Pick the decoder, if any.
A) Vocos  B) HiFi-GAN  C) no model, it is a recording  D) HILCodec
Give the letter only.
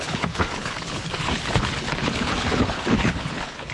D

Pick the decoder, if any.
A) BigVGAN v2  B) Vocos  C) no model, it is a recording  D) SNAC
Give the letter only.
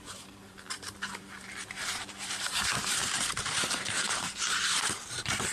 A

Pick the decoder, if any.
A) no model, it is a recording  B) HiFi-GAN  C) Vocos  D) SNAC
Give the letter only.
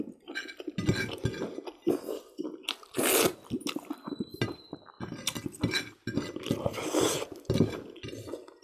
A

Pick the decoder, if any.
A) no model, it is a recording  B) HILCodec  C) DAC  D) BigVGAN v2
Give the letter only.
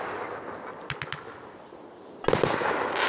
A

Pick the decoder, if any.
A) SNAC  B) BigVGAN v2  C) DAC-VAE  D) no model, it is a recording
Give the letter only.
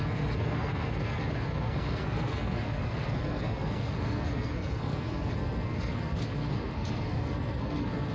A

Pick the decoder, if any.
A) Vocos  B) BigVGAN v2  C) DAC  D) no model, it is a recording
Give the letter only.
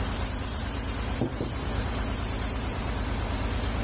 B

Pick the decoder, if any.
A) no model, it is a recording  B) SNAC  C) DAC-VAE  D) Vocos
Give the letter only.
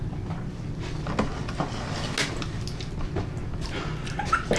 A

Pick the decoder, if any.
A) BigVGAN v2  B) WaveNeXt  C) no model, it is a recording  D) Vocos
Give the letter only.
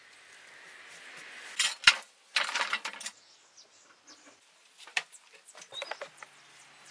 C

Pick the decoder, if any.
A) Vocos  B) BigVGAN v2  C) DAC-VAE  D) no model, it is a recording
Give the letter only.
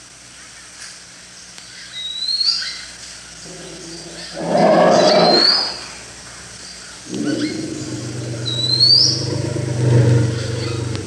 D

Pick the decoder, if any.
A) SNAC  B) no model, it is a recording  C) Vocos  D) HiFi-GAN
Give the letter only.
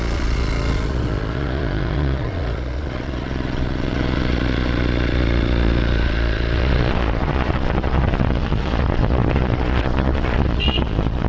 C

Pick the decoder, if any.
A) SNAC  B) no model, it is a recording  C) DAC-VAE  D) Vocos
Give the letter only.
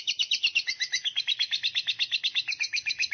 C